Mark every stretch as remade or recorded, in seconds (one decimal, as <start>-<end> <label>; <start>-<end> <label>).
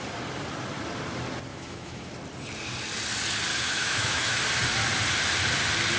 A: 0.0-1.5 recorded; 1.5-2.1 remade; 2.1-3.5 recorded; 3.5-4.4 remade; 4.4-6.0 recorded